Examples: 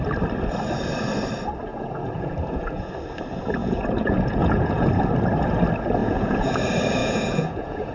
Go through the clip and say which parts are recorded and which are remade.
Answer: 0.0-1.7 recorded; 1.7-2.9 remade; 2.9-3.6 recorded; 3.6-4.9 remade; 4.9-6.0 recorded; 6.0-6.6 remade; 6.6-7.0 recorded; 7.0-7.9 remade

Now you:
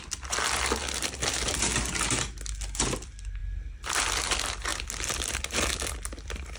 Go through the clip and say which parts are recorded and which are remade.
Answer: 0.0-0.8 recorded; 0.8-1.9 remade; 1.9-6.6 recorded

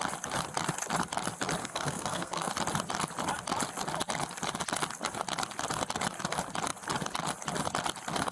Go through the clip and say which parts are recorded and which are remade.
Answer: 0.0-1.6 recorded; 1.6-2.5 remade; 2.5-8.3 recorded

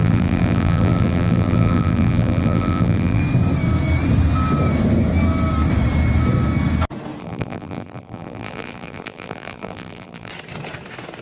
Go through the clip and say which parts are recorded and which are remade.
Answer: 0.0-3.2 remade; 3.2-7.2 recorded; 7.2-10.3 remade; 10.3-11.2 recorded

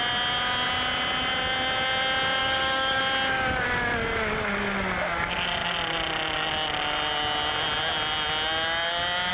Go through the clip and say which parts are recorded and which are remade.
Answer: 0.0-2.4 recorded; 2.4-3.0 remade; 3.0-9.3 recorded

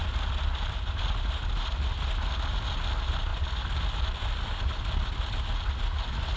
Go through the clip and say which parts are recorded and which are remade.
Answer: 0.0-3.3 recorded; 3.3-5.3 remade; 5.3-6.4 recorded

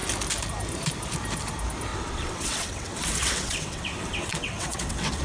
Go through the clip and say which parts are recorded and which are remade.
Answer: 0.0-1.9 recorded; 1.9-5.2 remade

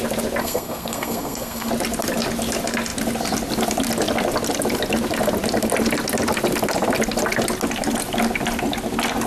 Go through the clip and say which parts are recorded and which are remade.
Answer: 0.0-0.4 recorded; 0.4-1.7 remade; 1.7-9.3 recorded